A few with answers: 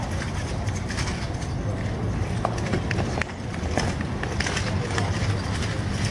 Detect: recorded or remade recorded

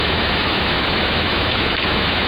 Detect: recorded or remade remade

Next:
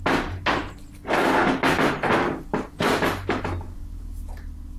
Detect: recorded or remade recorded